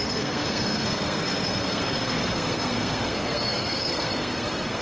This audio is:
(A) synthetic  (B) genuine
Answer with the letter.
A